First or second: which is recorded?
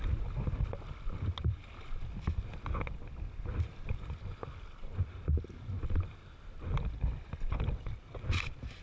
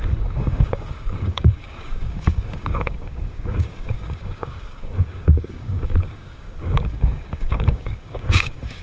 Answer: first